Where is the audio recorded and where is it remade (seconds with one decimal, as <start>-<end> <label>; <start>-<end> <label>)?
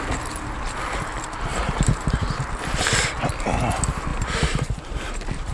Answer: 0.0-1.5 recorded; 1.5-2.2 remade; 2.2-4.1 recorded; 4.1-5.1 remade; 5.1-5.5 recorded